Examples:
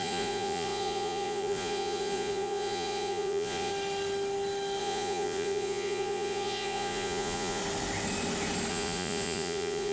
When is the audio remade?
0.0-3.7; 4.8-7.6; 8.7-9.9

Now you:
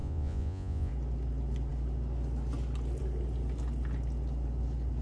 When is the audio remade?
0.0-0.9

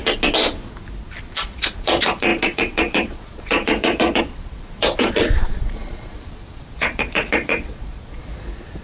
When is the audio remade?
1.4-8.8